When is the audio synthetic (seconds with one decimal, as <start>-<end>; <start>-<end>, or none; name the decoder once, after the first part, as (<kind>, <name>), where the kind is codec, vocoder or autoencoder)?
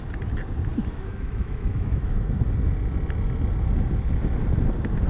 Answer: 0.7-2.4 (autoencoder, DAC-VAE)